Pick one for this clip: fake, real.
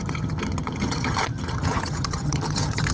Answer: fake